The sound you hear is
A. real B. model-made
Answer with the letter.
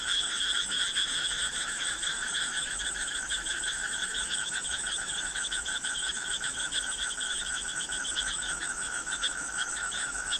B